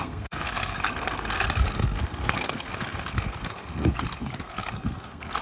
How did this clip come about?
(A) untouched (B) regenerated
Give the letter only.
B